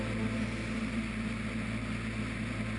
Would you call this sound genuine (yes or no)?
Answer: yes